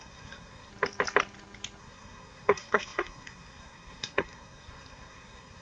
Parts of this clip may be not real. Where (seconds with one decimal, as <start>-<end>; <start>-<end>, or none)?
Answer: 0.0-0.7; 1.8-5.6